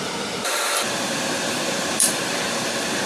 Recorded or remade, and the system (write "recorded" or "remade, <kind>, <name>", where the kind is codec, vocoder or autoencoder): remade, vocoder, BigVGAN v2